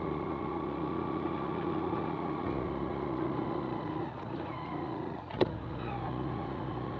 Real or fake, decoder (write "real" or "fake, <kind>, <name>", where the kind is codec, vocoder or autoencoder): fake, vocoder, Vocos